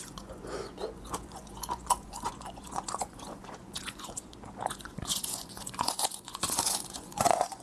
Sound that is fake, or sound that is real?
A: fake